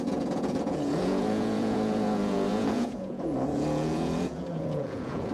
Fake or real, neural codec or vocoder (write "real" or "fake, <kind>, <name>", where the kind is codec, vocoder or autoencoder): fake, vocoder, Vocos